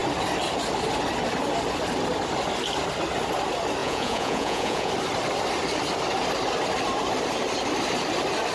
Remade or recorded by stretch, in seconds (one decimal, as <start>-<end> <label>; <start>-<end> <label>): 0.0-3.8 recorded; 3.8-4.9 remade; 4.9-8.5 recorded